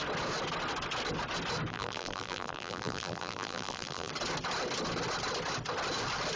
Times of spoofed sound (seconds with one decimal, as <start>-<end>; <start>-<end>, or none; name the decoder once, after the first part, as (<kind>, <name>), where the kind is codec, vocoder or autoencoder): 1.7-4.1 (vocoder, BigVGAN v2)